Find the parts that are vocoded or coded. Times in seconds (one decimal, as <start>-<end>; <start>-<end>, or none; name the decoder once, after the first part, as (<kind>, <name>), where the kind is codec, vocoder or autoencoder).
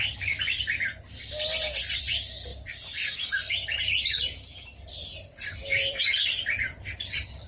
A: 0.0-6.1 (vocoder, BigVGAN v2); 7.0-7.5